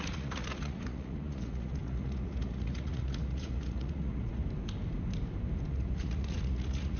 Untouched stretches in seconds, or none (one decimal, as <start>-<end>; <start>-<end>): 4.4-5.7